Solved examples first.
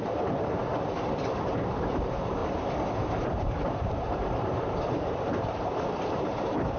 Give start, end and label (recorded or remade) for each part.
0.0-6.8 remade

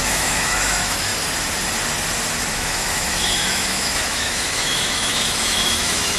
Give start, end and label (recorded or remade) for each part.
0.0-1.1 remade; 1.1-2.5 recorded; 2.5-6.2 remade

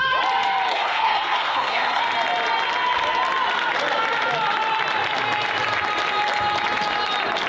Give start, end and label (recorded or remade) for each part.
0.0-0.7 recorded; 0.7-2.0 remade; 2.0-7.5 recorded

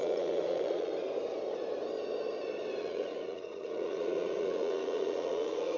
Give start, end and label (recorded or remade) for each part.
0.0-0.9 remade; 0.9-2.8 recorded; 2.8-5.8 remade

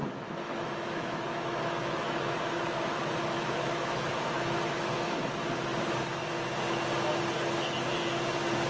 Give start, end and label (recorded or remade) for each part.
0.0-5.2 remade; 5.2-8.7 recorded

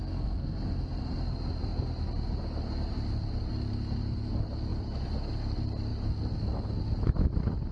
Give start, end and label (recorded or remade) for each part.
0.0-7.7 recorded

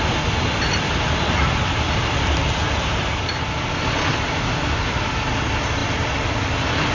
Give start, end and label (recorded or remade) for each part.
0.0-6.9 recorded

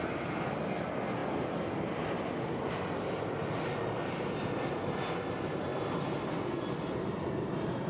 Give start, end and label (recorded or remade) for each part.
0.0-7.9 recorded